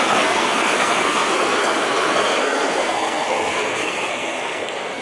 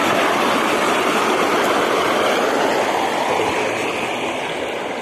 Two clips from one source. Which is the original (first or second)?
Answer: second